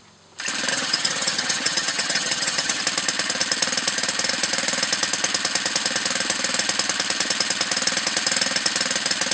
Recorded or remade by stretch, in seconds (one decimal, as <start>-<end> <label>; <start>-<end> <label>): 0.0-0.7 recorded; 0.7-2.8 remade; 2.8-9.3 recorded